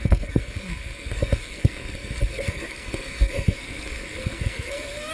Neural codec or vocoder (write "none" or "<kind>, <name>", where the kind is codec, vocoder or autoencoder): codec, SNAC